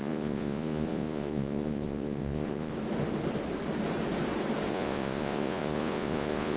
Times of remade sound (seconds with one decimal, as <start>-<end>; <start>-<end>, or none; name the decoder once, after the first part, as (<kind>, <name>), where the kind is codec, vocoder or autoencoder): 0.0-2.7 (vocoder, Vocos); 4.7-6.6